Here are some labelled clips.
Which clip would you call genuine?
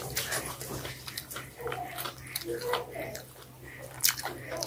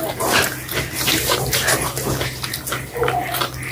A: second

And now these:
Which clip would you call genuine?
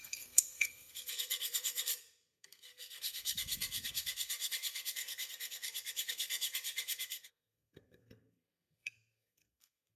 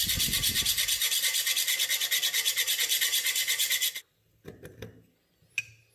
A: second